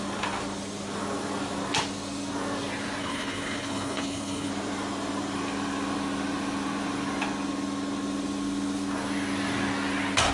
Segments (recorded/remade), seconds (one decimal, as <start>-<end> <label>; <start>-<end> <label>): 0.0-3.0 recorded; 3.0-4.5 remade; 4.5-10.3 recorded